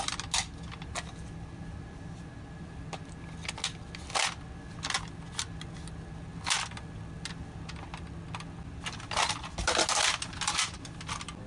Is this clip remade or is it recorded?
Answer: recorded